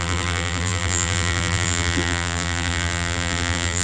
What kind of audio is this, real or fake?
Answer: fake